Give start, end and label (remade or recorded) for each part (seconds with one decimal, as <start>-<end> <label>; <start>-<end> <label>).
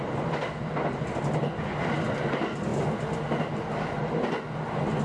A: 0.0-5.0 recorded